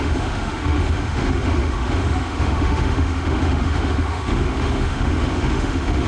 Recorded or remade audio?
remade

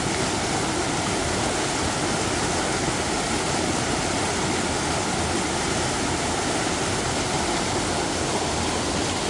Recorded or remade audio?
recorded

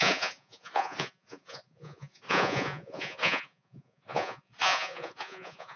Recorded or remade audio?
remade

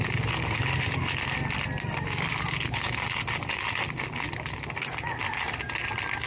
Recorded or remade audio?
recorded